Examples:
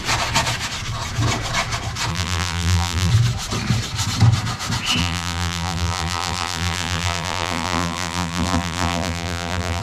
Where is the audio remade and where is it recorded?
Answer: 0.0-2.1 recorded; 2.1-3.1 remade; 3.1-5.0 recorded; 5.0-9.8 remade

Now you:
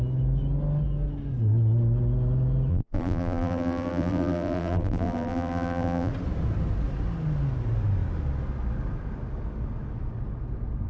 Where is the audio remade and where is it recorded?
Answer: 0.0-2.7 recorded; 2.7-6.1 remade; 6.1-10.9 recorded

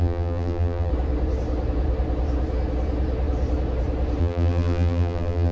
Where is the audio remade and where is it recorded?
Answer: 0.0-0.9 remade; 0.9-4.2 recorded; 4.2-5.5 remade

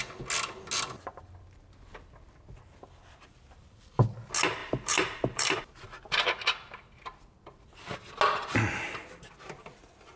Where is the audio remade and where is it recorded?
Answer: 0.0-4.6 recorded; 4.6-5.6 remade; 5.6-10.2 recorded

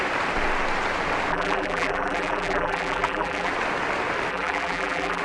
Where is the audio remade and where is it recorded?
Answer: 0.0-1.3 recorded; 1.3-3.5 remade; 3.5-4.3 recorded; 4.3-5.2 remade

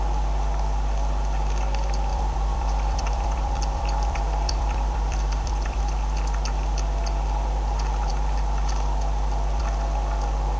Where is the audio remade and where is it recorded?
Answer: 0.0-2.1 recorded; 2.1-5.8 remade; 5.8-10.6 recorded